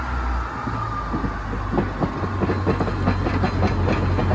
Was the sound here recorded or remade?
recorded